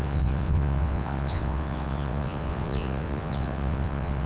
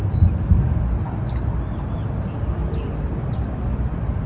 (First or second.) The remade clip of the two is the first